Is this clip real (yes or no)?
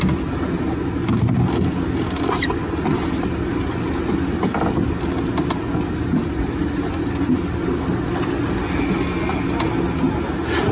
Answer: yes